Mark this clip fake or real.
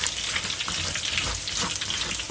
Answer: real